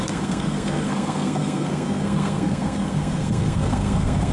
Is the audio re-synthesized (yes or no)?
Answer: yes